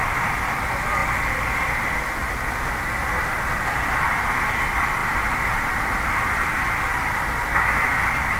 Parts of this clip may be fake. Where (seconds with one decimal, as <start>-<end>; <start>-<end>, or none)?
7.5-8.4

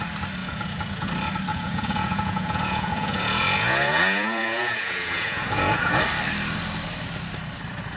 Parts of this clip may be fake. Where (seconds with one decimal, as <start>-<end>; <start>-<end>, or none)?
0.4-1.1; 1.5-6.0

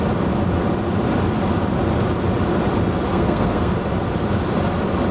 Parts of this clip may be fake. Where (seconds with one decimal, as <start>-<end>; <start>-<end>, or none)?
3.1-3.7

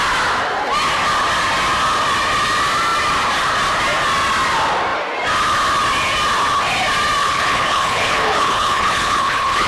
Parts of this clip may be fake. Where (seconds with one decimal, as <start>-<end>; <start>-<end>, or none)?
7.2-9.7

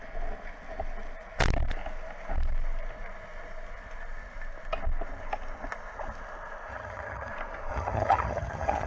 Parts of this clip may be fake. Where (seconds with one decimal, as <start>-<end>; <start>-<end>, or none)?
6.7-7.3; 7.7-8.9

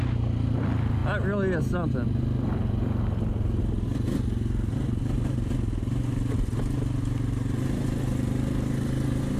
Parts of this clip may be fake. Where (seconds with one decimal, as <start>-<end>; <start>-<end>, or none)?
none